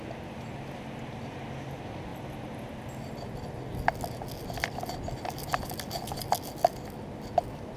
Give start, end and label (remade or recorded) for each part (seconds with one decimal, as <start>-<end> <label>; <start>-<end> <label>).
0.0-7.8 recorded